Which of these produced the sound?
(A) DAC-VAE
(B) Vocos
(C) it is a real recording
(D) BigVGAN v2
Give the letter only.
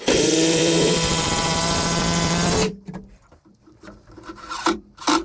D